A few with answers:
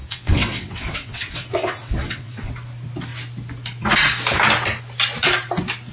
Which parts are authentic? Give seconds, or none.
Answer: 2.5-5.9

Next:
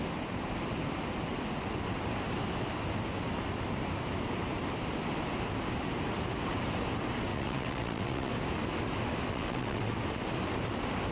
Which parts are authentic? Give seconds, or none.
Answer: 0.0-7.3; 8.3-9.3; 9.9-11.1

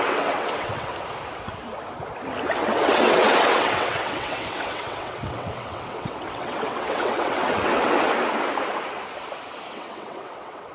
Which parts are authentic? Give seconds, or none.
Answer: 0.9-2.4; 8.1-9.7